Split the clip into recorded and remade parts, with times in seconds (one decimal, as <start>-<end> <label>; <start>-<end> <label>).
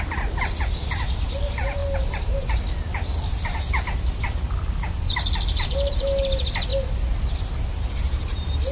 0.0-8.7 recorded